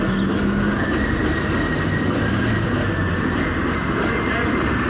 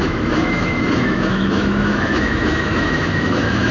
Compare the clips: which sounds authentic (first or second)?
first